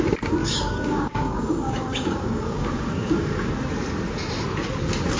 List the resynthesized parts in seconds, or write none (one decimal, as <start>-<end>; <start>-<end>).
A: 0.4-3.5